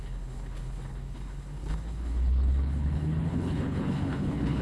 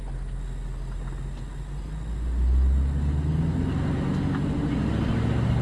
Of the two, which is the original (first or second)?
second